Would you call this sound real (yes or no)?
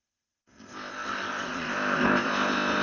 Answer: no